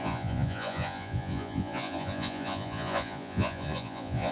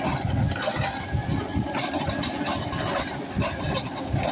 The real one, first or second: second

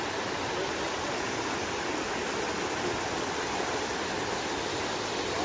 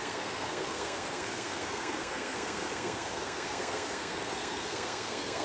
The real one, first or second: first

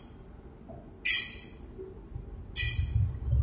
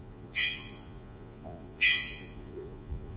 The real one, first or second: first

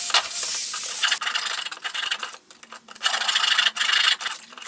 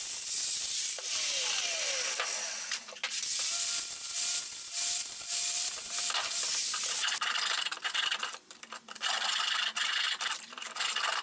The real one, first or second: first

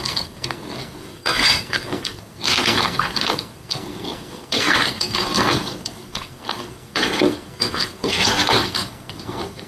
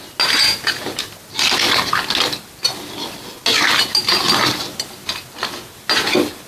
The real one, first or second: second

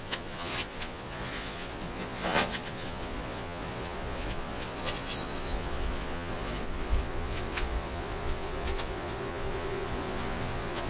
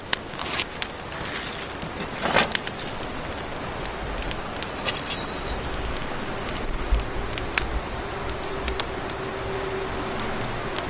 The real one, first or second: second